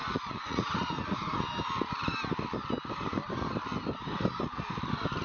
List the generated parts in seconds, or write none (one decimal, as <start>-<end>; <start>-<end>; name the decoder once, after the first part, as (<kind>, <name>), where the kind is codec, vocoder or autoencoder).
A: 0.0-1.4 (vocoder, Vocos)

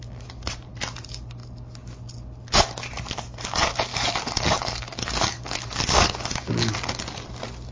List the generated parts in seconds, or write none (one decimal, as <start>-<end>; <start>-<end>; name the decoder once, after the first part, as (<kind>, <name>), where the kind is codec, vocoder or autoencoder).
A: 3.9-5.6 (codec, DAC)